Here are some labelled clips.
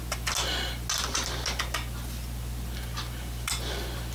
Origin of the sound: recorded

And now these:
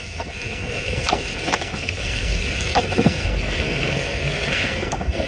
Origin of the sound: remade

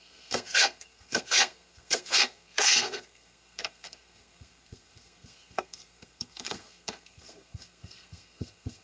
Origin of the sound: remade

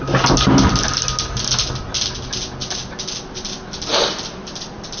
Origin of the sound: recorded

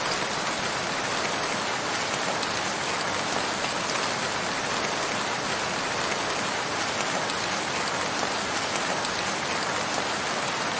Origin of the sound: recorded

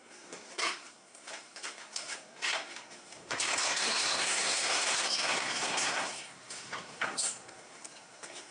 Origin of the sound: remade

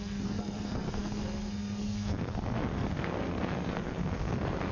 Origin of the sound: remade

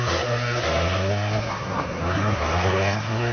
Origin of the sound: remade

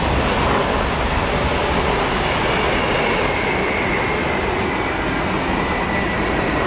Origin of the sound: recorded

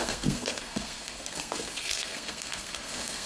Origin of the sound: remade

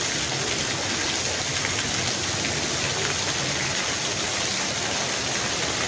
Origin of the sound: recorded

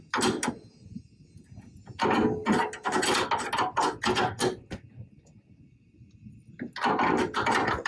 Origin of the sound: recorded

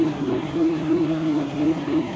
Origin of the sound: remade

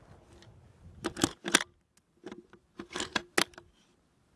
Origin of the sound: recorded